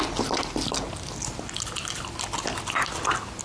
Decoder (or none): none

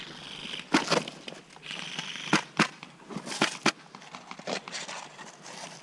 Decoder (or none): none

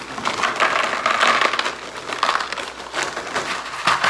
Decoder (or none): none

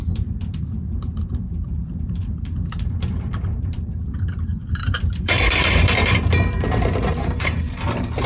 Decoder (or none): vocoder, BigVGAN v2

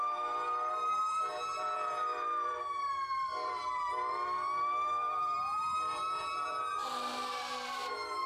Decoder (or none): vocoder, BigVGAN v2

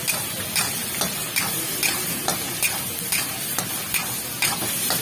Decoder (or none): none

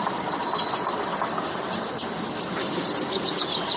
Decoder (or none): none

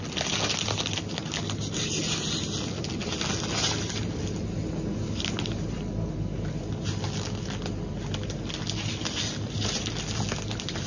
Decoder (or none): none